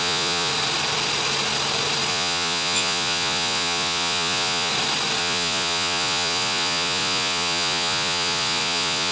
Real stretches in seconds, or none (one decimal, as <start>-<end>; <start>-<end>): 0.5-2.1; 4.7-5.2